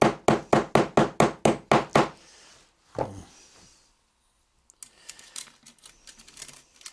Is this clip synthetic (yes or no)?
no